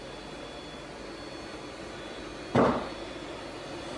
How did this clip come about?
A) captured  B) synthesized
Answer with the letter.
A